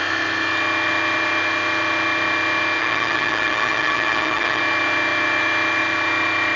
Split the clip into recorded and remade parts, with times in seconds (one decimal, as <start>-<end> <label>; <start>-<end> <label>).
0.0-2.8 recorded; 2.8-4.6 remade; 4.6-6.6 recorded